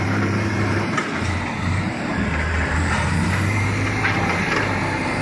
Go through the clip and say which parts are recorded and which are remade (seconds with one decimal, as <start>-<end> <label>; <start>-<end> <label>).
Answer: 0.0-5.2 remade